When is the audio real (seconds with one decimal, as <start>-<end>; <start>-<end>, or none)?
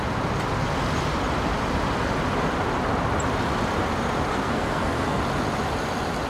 0.0-4.3; 5.2-6.3